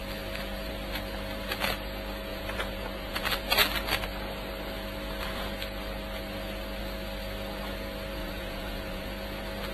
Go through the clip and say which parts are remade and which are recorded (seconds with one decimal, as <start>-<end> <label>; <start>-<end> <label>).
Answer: 0.0-2.3 recorded; 2.3-3.2 remade; 3.2-8.2 recorded; 8.2-9.1 remade; 9.1-9.7 recorded